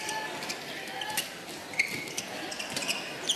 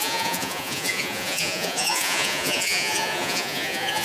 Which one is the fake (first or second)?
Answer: second